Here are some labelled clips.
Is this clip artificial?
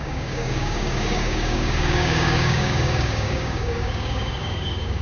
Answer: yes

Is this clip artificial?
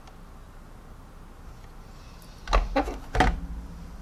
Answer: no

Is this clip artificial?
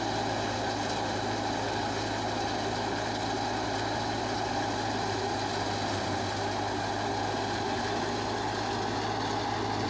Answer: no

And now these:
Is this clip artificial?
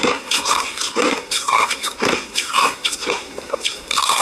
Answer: yes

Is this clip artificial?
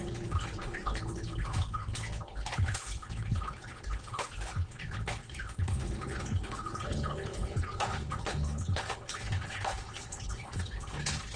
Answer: yes